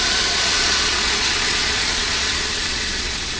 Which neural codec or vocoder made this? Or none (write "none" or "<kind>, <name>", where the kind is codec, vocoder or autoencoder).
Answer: vocoder, Vocos